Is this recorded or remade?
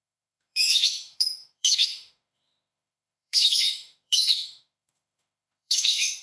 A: remade